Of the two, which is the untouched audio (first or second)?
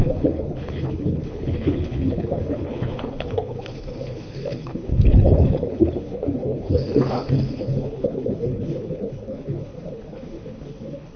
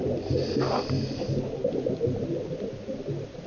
second